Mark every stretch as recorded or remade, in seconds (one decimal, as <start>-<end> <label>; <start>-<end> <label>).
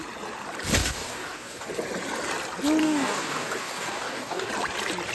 0.0-0.8 recorded; 0.8-1.7 remade; 1.7-2.8 recorded; 2.8-4.5 remade; 4.5-5.1 recorded